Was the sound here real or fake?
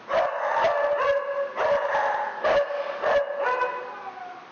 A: real